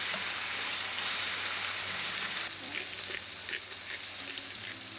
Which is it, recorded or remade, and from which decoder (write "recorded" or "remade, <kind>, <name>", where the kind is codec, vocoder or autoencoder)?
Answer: recorded